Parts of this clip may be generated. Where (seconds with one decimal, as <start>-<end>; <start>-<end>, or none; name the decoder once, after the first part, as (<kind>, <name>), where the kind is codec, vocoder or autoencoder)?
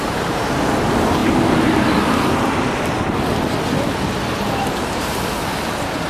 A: 0.0-6.1 (vocoder, BigVGAN v2)